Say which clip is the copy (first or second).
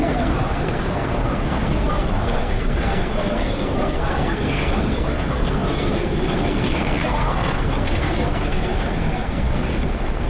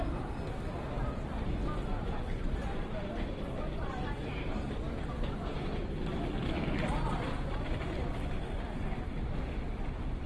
first